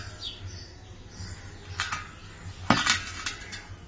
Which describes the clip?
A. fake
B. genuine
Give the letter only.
B